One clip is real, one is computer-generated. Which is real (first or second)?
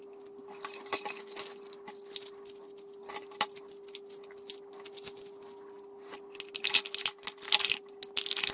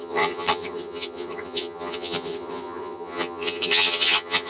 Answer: first